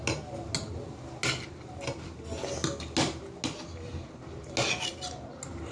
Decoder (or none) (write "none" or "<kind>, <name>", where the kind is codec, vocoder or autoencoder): none